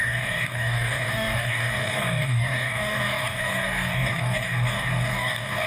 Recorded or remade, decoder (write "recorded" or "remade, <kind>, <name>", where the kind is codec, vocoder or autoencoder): remade, codec, DAC